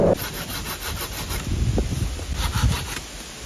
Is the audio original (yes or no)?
yes